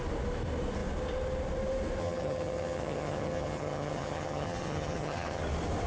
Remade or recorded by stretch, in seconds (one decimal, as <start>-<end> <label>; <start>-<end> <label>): 0.0-2.0 recorded; 2.0-5.4 remade; 5.4-5.9 recorded